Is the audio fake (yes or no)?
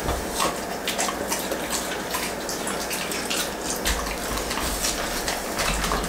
no